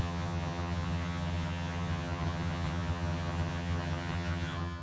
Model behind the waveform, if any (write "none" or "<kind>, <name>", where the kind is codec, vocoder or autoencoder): vocoder, HiFi-GAN